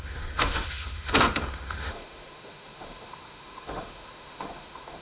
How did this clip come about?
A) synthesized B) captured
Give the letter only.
A